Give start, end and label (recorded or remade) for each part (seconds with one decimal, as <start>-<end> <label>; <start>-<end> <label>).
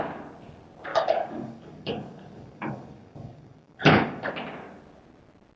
0.0-0.9 recorded; 0.9-4.3 remade; 4.3-5.6 recorded